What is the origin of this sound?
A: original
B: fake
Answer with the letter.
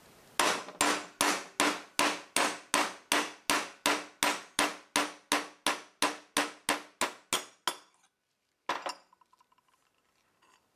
A